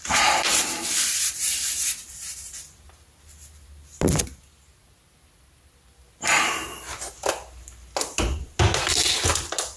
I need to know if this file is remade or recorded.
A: recorded